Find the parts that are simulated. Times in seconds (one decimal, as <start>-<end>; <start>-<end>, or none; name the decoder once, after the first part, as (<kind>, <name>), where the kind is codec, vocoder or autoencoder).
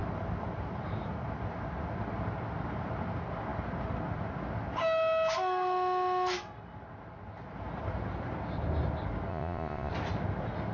9.3-9.9 (vocoder, Vocos)